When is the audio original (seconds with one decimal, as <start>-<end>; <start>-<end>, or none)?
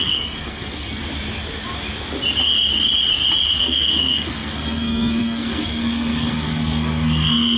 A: 1.0-3.6